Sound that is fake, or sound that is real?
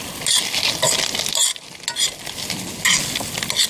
real